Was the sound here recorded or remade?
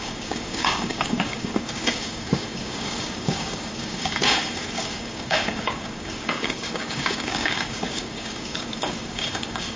remade